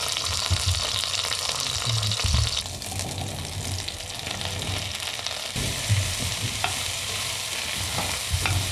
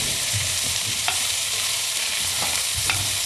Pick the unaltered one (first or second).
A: first